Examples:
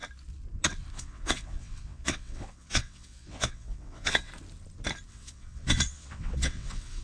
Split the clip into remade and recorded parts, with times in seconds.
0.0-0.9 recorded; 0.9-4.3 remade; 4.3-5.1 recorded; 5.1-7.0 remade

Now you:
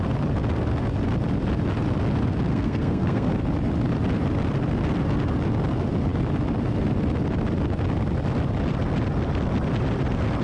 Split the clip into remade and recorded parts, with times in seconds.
0.0-2.5 recorded; 2.5-3.3 remade; 3.3-10.4 recorded

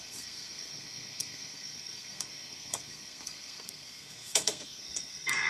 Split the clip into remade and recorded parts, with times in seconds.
0.0-5.5 remade

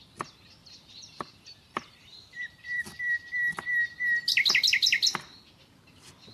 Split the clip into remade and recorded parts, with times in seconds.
0.0-0.6 recorded; 0.6-3.0 remade; 3.0-6.3 recorded

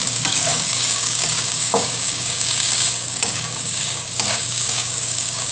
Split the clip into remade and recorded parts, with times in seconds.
0.0-5.5 remade

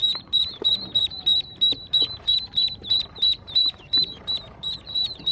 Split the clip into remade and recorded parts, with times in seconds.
0.0-5.3 remade

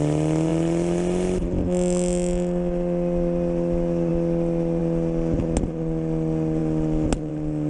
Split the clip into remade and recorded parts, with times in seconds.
0.0-7.7 recorded

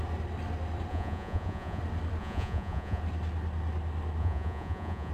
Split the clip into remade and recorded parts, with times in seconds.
0.0-0.9 recorded; 0.9-1.8 remade; 1.8-2.2 recorded; 2.2-3.0 remade; 3.0-4.2 recorded; 4.2-5.1 remade